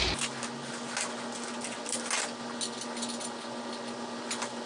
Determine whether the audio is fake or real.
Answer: real